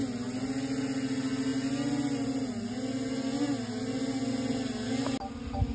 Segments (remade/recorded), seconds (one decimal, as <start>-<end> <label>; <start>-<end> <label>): 0.0-5.7 recorded